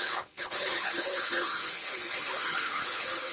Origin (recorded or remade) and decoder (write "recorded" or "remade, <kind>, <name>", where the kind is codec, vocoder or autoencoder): remade, codec, HILCodec